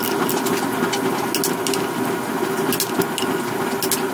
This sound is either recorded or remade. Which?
recorded